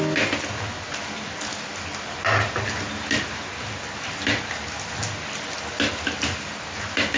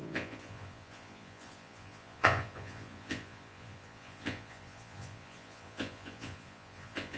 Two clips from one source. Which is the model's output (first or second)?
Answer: second